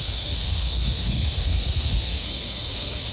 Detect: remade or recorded remade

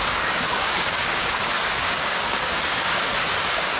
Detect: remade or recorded remade